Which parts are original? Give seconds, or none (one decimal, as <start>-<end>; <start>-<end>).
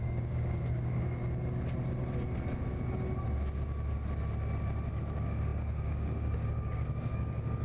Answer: 1.2-5.0